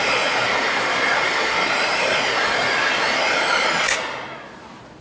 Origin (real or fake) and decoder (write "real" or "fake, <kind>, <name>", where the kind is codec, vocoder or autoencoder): real